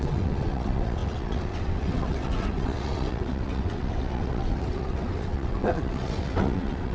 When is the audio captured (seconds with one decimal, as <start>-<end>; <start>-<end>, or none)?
none